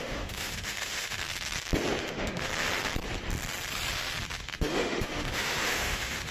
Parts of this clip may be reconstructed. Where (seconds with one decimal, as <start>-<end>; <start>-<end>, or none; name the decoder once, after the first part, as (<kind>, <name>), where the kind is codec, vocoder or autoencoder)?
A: 0.0-1.2 (autoencoder, DAC-VAE); 2.0-2.5; 4.4-6.3